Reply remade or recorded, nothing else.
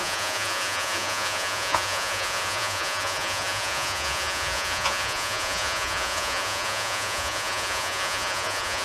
remade